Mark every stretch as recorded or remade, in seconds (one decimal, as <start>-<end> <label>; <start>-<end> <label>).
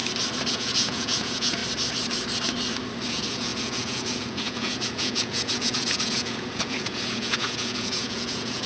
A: 0.0-0.5 recorded; 0.5-1.6 remade; 1.6-3.1 recorded; 3.1-8.7 remade